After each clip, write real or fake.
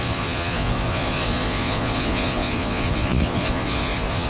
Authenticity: fake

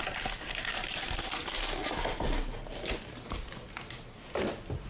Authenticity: real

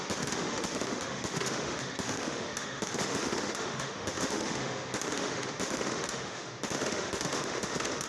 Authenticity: fake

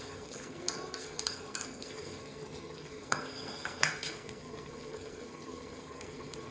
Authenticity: fake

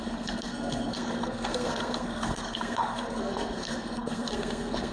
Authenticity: fake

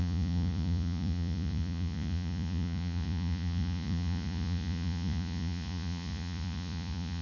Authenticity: fake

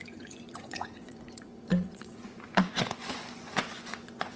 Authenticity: fake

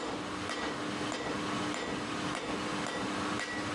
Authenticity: real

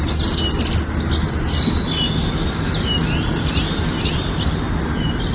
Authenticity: real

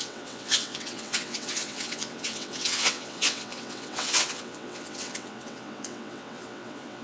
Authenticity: fake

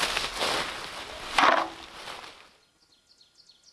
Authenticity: real